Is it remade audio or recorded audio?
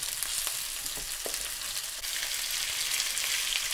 recorded